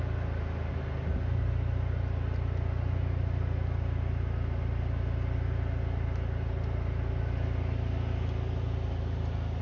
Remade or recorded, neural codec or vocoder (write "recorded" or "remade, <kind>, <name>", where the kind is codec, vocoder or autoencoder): recorded